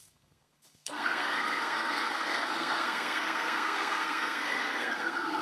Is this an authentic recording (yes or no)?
no